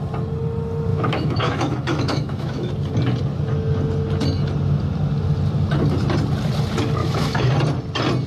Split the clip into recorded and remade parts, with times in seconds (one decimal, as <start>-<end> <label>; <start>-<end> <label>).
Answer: 0.0-0.9 recorded; 0.9-2.7 remade; 2.7-7.0 recorded; 7.0-7.5 remade; 7.5-8.3 recorded